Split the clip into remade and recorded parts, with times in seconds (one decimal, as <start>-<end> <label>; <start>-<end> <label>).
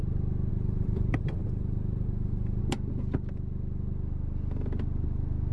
0.0-0.5 recorded; 0.5-2.6 remade; 2.6-5.5 recorded